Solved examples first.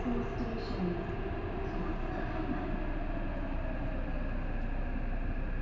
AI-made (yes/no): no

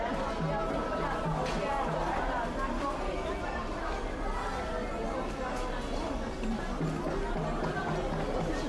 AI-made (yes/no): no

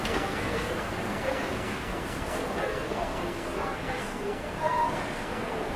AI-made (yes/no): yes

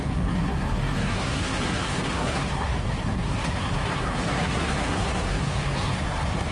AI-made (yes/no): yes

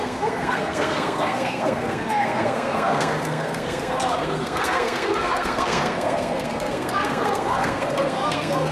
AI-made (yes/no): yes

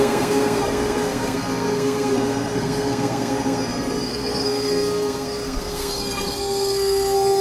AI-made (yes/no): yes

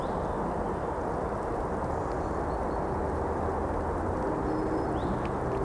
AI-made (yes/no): no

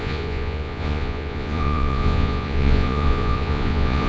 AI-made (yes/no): yes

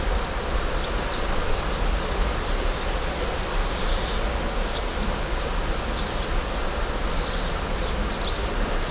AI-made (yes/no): no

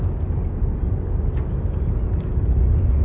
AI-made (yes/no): no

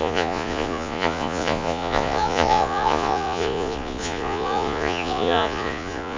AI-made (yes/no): yes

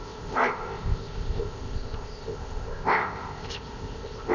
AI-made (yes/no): yes